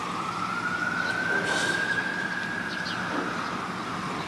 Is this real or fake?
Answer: fake